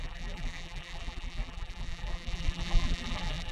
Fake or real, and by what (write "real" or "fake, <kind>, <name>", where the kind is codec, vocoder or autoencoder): fake, vocoder, BigVGAN v2